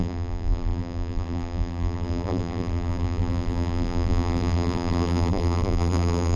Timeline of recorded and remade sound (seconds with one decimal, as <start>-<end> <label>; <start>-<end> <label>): 0.0-6.4 remade